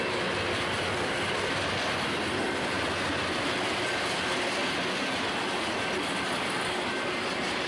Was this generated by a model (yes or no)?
no